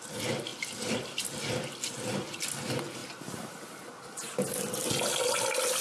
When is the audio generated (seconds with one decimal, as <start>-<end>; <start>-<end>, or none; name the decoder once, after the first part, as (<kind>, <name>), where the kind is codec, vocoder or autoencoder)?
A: none